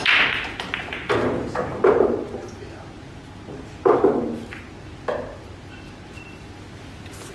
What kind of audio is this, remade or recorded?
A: recorded